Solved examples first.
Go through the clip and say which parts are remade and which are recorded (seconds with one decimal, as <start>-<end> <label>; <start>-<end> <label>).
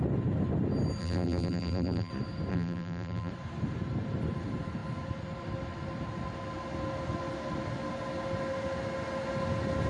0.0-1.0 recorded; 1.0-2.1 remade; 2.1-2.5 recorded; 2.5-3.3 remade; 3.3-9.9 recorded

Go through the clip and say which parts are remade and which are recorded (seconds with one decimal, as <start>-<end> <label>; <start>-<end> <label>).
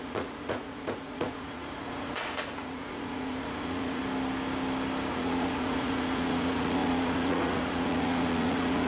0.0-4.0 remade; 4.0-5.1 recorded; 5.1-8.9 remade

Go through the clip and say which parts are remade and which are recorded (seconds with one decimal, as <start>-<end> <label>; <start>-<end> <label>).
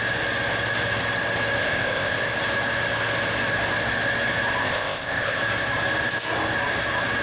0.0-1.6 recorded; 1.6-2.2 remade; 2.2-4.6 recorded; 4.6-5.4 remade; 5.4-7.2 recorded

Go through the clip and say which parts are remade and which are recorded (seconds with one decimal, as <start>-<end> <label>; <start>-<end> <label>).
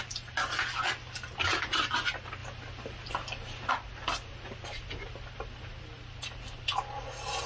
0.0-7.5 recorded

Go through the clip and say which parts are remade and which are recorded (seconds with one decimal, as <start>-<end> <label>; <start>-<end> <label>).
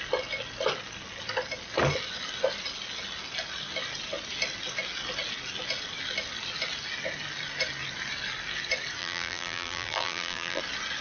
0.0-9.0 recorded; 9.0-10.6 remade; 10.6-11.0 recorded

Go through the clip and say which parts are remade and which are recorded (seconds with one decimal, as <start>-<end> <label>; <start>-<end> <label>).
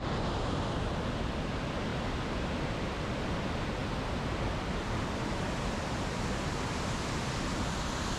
0.0-8.2 recorded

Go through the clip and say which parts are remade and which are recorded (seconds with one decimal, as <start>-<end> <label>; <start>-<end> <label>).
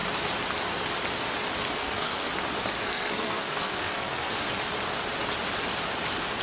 0.0-1.8 recorded; 1.8-2.3 remade; 2.3-2.8 recorded; 2.8-4.3 remade; 4.3-6.4 recorded